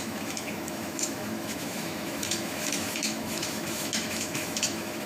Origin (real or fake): fake